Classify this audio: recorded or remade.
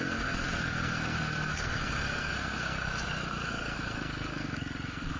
remade